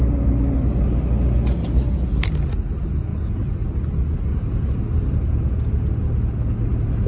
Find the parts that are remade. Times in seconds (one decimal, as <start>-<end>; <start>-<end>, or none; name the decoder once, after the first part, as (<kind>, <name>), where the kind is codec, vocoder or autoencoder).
1.6-2.1 (vocoder, BigVGAN v2); 4.3-5.1